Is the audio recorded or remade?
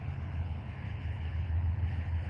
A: remade